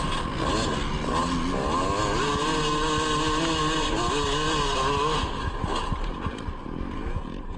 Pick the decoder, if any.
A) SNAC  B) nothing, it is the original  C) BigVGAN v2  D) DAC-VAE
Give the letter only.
B